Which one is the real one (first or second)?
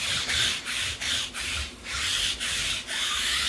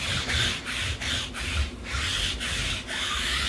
second